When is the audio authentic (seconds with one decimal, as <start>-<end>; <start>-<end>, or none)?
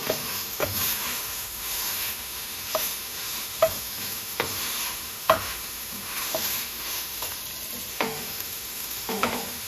7.4-7.9